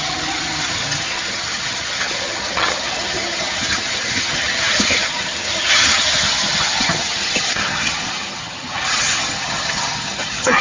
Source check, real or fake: fake